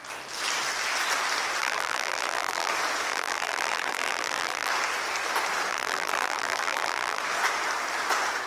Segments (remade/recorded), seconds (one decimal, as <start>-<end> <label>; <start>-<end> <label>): 0.0-1.6 recorded; 1.6-2.7 remade; 2.7-3.1 recorded; 3.1-4.7 remade; 4.7-5.7 recorded; 5.7-7.2 remade; 7.2-8.5 recorded